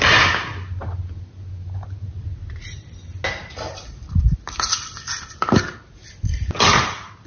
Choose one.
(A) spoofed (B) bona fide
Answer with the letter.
B